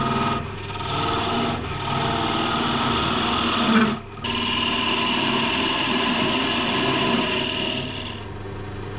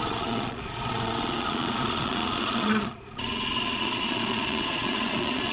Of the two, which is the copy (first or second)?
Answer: second